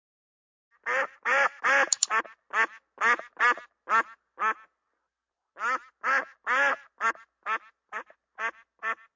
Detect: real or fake real